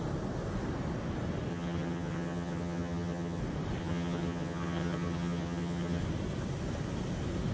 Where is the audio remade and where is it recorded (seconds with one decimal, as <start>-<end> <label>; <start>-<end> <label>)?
0.0-1.5 recorded; 1.5-3.4 remade; 3.4-3.8 recorded; 3.8-6.0 remade; 6.0-7.5 recorded